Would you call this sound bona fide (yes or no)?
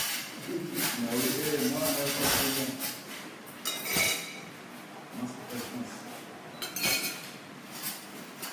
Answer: yes